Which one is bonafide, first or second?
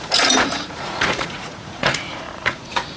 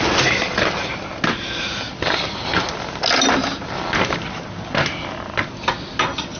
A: second